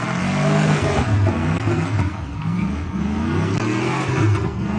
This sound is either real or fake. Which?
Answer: fake